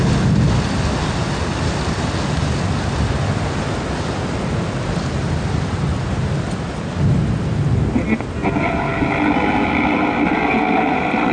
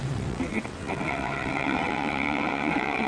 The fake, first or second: second